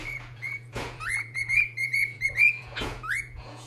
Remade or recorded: remade